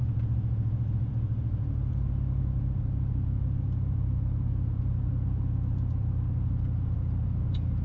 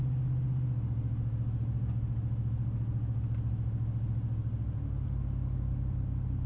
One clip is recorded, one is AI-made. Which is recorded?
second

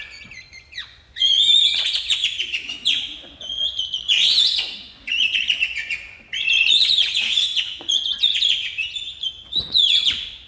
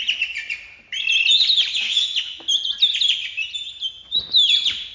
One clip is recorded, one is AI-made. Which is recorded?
second